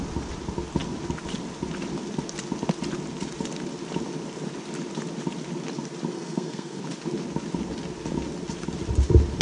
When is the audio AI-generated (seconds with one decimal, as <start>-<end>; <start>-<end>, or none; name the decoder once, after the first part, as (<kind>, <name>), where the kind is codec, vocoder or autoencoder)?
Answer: 6.1-6.8 (codec, SNAC)